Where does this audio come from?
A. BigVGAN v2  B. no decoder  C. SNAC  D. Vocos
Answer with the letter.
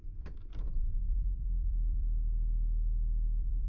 A